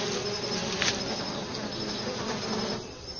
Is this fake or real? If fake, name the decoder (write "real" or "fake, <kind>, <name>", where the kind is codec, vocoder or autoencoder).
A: real